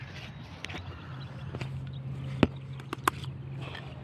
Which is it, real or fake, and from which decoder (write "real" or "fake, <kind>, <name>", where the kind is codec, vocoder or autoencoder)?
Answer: real